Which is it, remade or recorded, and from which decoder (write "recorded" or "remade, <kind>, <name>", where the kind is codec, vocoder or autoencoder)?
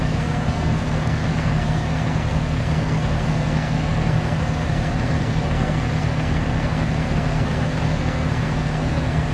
remade, codec, SNAC